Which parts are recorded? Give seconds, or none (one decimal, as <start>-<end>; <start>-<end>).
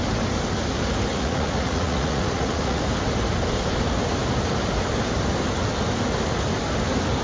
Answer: 0.0-1.1; 2.8-7.2